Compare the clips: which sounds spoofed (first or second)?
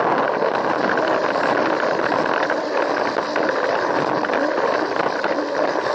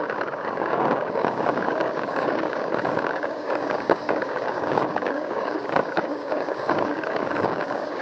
second